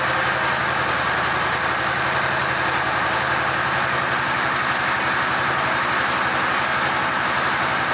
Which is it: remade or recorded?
recorded